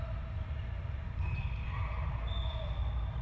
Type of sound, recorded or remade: recorded